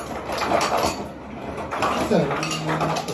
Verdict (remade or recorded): recorded